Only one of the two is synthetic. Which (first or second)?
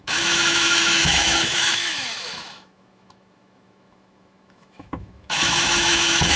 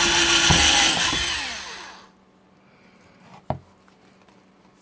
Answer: first